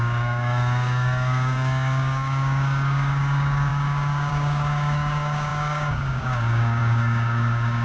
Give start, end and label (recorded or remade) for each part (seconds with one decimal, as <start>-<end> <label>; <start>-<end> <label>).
0.0-7.8 remade

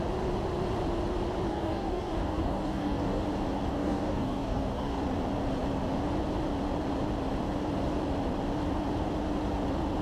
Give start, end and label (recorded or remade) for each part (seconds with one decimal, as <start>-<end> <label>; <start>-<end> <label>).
0.0-1.5 recorded; 1.5-3.2 remade; 3.2-3.7 recorded; 3.7-5.0 remade; 5.0-10.0 recorded

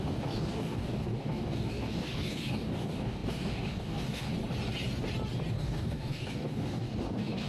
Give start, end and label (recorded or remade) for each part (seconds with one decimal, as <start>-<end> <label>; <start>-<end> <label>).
0.0-4.3 remade; 4.3-5.5 recorded; 5.5-7.5 remade

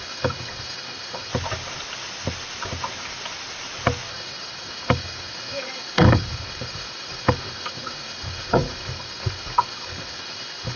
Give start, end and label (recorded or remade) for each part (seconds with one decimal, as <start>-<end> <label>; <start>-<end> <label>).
0.0-1.3 remade; 1.3-4.1 recorded; 4.1-10.8 remade

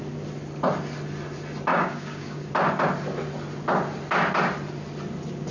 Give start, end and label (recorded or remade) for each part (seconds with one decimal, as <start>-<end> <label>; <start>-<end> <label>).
0.0-1.7 recorded; 1.7-2.5 remade; 2.5-5.5 recorded

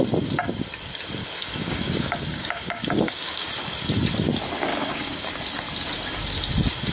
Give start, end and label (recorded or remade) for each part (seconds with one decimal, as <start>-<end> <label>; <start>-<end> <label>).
0.0-1.2 recorded; 1.2-3.5 remade; 3.5-4.7 recorded; 4.7-5.3 remade; 5.3-6.9 recorded

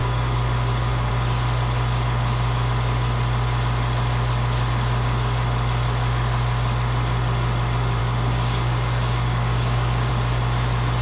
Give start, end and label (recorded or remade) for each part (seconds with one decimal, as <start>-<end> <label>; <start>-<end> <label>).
0.0-1.1 remade; 1.1-8.0 recorded; 8.0-10.1 remade; 10.1-11.0 recorded

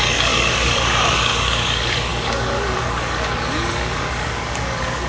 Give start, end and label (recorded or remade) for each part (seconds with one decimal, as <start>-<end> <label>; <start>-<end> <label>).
0.0-5.1 remade